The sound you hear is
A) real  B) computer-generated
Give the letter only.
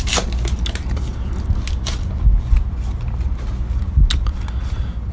A